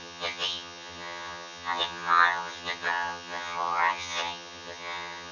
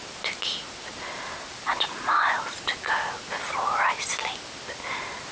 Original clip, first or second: second